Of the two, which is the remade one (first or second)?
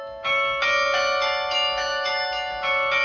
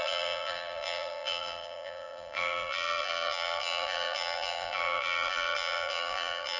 second